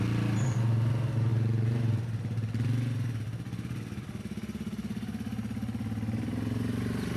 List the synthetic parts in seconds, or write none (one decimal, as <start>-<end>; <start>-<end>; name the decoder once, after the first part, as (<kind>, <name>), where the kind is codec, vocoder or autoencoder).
none